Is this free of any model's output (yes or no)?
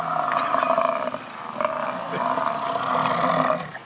yes